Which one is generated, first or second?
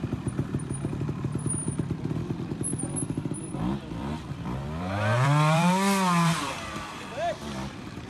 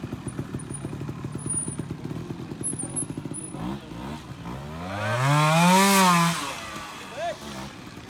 first